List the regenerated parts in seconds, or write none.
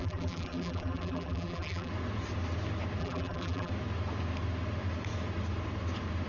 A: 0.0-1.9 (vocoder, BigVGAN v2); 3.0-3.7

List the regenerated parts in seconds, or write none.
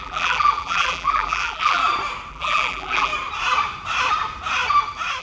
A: 0.0-1.8 (vocoder, BigVGAN v2); 2.3-3.1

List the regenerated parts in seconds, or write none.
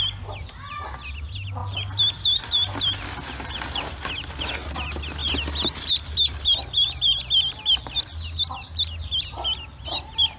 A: 1.6-4.5 (vocoder, BigVGAN v2); 5.2-7.2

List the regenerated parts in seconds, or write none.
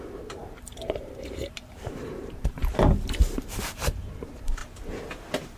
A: 0.0-4.6 (vocoder, BigVGAN v2)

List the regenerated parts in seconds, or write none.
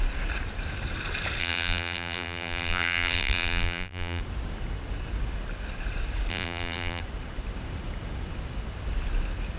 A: 1.4-4.2 (vocoder, BigVGAN v2); 6.3-7.0